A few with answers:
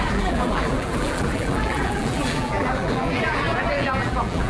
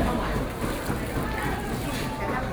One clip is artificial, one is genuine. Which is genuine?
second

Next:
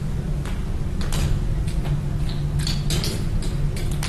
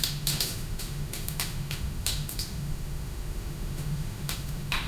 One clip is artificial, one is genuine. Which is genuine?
first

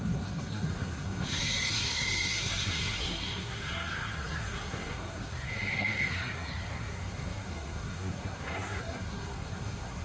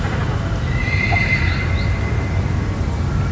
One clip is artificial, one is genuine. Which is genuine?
second